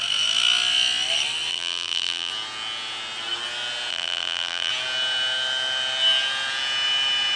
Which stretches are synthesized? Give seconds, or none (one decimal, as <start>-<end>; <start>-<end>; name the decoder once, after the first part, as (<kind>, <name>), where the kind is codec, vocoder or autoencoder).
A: 1.5-2.3 (vocoder, BigVGAN v2); 3.9-4.7